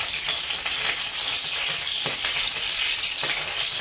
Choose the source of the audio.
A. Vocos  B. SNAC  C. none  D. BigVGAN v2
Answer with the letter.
D